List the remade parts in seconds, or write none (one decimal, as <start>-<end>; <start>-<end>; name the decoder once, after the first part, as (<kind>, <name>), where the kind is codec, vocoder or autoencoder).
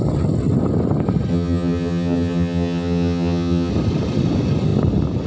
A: 1.3-3.7 (vocoder, HiFi-GAN)